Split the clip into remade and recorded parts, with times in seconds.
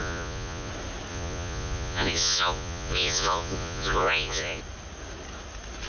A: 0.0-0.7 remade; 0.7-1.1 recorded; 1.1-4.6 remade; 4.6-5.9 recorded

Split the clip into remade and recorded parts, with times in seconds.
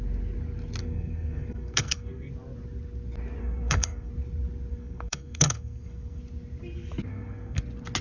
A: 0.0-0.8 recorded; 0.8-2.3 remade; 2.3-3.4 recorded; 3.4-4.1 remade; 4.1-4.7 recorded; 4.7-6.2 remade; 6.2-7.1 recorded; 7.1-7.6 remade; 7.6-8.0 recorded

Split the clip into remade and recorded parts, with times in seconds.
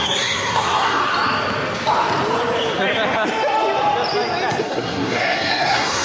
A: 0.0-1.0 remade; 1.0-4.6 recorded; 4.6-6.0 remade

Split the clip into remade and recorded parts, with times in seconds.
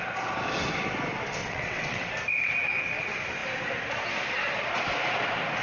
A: 0.0-1.4 recorded; 1.4-2.1 remade; 2.1-5.6 recorded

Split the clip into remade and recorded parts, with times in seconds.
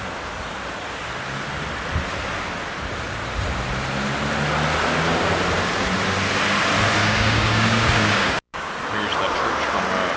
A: 0.0-7.0 recorded; 7.0-8.7 remade; 8.7-10.2 recorded